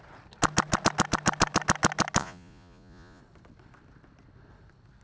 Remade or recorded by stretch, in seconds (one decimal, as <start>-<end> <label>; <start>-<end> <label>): 0.0-2.2 recorded; 2.2-3.2 remade; 3.2-5.0 recorded